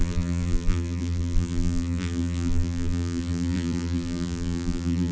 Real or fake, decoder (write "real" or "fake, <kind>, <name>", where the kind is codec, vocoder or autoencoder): fake, vocoder, BigVGAN v2